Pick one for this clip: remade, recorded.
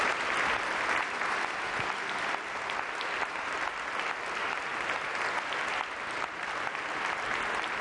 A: recorded